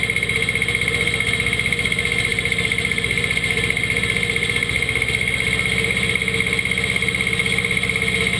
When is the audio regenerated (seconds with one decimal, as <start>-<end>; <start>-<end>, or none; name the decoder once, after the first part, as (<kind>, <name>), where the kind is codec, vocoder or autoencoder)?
2.3-3.0 (vocoder, BigVGAN v2)